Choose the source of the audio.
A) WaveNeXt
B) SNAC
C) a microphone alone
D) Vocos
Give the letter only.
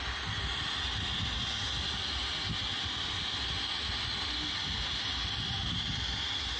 C